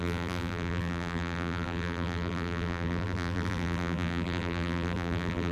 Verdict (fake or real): fake